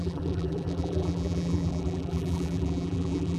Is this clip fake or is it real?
fake